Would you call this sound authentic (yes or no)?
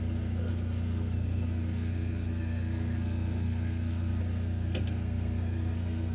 no